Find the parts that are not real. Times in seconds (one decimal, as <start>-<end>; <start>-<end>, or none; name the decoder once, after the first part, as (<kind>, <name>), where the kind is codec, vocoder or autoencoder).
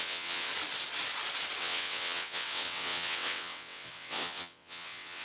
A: 0.0-0.5 (vocoder, WaveNeXt); 1.6-5.2